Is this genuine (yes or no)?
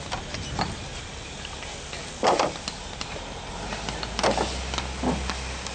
yes